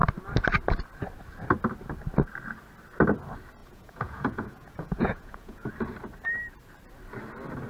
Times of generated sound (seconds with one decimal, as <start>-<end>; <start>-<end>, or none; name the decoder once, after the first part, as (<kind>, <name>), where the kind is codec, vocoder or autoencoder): 3.6-5.7 (vocoder, Vocos)